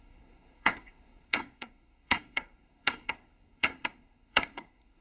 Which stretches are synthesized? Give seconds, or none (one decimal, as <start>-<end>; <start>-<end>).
0.0-5.0